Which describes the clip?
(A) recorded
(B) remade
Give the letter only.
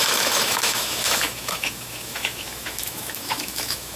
B